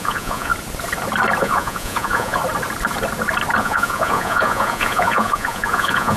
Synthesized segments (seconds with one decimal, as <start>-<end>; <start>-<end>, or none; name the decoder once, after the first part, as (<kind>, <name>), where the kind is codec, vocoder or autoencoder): 0.0-0.5 (vocoder, Vocos); 1.4-2.4; 3.6-6.2